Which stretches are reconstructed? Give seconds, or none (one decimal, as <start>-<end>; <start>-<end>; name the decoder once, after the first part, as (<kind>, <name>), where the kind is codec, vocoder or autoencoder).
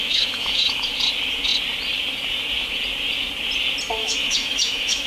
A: 0.0-1.0 (autoencoder, DAC-VAE); 4.0-5.1